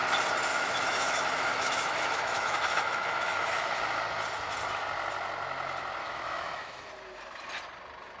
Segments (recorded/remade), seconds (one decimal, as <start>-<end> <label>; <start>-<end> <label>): 0.0-0.5 recorded; 0.5-3.8 remade; 3.8-6.0 recorded; 6.0-6.9 remade; 6.9-8.2 recorded